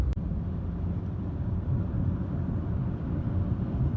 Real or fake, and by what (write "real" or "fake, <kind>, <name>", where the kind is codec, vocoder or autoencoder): fake, vocoder, BigVGAN v2